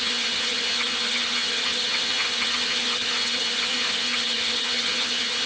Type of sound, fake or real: fake